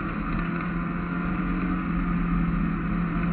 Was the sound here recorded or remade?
recorded